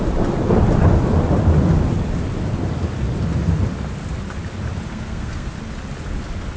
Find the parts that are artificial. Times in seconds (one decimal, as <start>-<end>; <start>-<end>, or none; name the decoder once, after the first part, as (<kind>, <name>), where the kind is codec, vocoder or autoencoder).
4.9-5.5 (codec, SNAC)